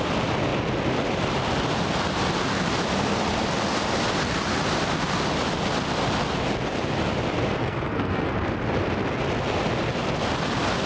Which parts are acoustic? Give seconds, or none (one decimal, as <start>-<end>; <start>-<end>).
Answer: 0.0-7.6; 8.3-10.9